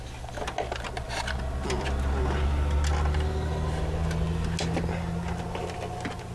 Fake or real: real